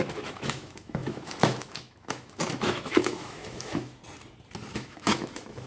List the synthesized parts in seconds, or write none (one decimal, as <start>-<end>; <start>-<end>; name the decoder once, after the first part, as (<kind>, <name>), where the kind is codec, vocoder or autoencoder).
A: 0.0-4.0 (autoencoder, DAC-VAE); 4.7-5.7